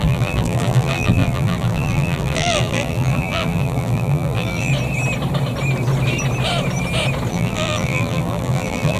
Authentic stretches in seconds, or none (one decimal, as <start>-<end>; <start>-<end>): 4.7-7.3